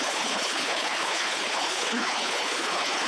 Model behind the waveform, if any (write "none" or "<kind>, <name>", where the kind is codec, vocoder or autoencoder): codec, HILCodec